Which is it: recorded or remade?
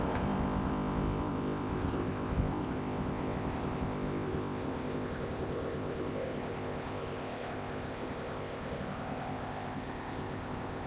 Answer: remade